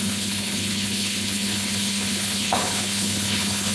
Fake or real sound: fake